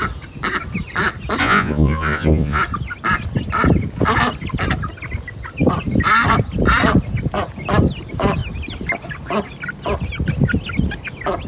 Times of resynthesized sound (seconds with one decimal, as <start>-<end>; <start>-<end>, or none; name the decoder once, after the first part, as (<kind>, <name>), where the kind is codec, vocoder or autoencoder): 1.4-2.6 (vocoder, Vocos)